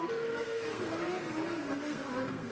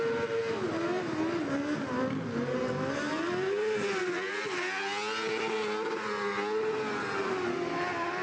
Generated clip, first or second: first